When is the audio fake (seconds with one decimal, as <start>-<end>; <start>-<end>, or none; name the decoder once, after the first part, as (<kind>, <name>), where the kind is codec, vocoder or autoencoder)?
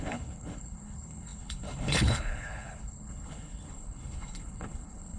0.0-5.2 (codec, HILCodec)